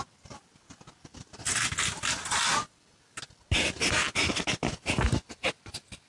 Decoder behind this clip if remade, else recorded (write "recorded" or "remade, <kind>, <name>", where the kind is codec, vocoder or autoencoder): recorded